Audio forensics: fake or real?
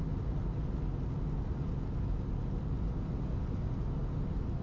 real